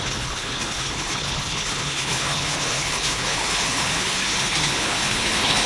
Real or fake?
fake